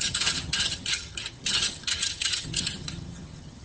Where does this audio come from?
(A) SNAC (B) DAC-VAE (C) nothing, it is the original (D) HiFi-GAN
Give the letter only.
D